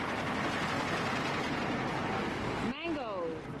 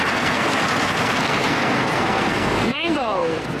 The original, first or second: first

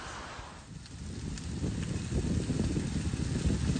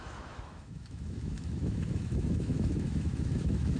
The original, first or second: first